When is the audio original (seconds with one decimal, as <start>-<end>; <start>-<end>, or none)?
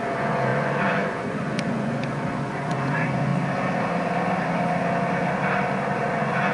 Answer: 3.3-6.1